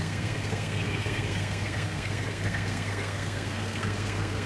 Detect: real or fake fake